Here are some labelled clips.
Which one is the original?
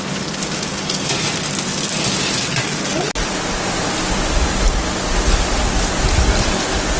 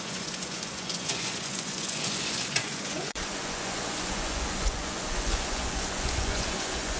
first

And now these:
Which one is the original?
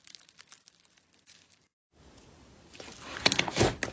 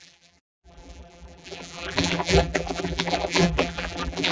first